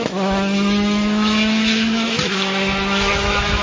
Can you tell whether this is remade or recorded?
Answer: remade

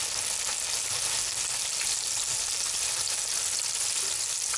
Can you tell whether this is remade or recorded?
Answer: recorded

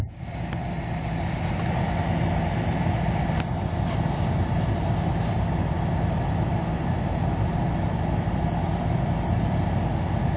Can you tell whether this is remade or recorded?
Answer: recorded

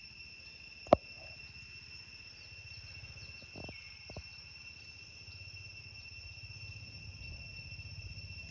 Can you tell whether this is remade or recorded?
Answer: recorded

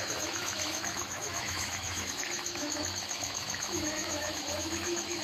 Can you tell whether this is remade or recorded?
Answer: remade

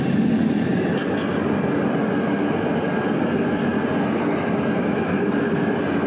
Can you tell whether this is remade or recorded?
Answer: recorded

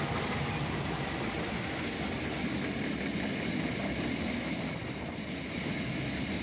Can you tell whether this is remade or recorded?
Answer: recorded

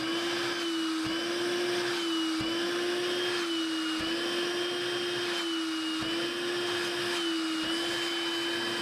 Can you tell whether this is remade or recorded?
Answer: recorded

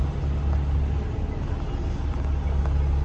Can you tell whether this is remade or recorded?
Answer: recorded